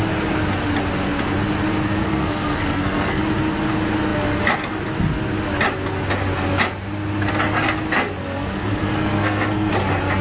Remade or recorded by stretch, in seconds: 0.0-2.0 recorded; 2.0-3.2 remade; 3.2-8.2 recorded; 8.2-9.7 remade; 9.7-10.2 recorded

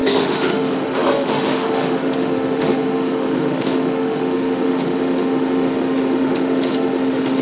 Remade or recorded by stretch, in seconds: 0.0-7.4 remade

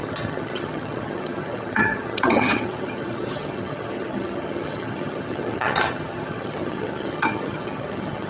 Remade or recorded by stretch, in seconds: 0.0-8.3 remade

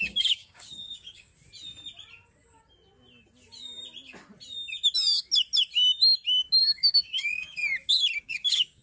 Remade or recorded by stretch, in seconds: 0.0-1.3 remade; 1.3-6.6 recorded; 6.6-7.6 remade; 7.6-8.2 recorded; 8.2-8.8 remade